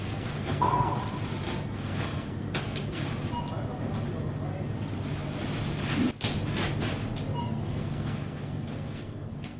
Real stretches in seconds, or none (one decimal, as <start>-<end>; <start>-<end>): 1.0-1.7; 3.0-7.4